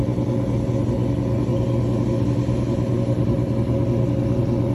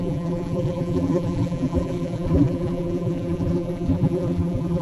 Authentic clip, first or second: first